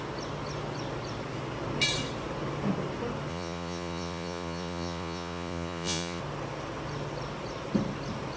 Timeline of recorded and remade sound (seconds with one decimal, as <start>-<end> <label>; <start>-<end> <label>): 0.0-3.3 recorded; 3.3-6.2 remade; 6.2-8.4 recorded